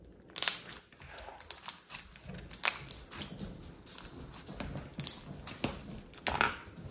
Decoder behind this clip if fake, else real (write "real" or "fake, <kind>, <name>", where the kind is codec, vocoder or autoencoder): real